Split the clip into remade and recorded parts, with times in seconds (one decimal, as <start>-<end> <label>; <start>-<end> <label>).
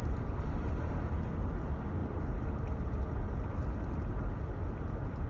0.0-0.9 remade; 0.9-5.3 recorded